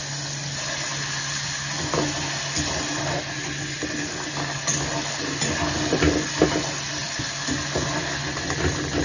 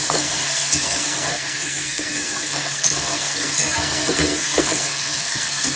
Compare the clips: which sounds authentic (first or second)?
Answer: first